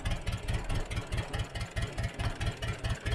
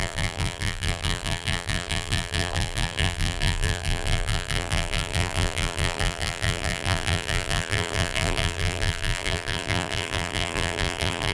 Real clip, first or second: first